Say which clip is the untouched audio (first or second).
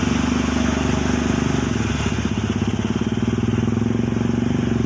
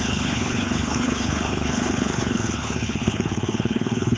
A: first